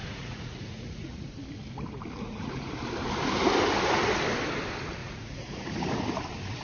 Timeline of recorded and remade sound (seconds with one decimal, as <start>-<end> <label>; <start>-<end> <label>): 0.0-1.3 remade; 1.3-2.3 recorded; 2.3-2.8 remade; 2.8-5.0 recorded; 5.0-5.9 remade; 5.9-6.6 recorded